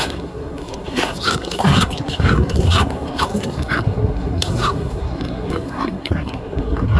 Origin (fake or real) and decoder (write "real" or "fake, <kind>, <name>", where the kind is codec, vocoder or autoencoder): fake, codec, SNAC